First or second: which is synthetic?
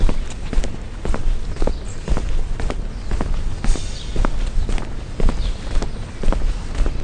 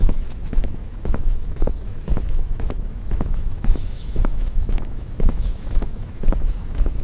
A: second